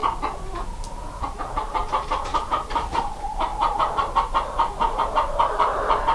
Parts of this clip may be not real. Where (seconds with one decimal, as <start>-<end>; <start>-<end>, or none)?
1.2-6.1